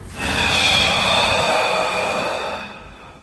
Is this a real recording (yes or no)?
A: yes